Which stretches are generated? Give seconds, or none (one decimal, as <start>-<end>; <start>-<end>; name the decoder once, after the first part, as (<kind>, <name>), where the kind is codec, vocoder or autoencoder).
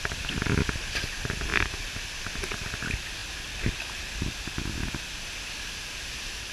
none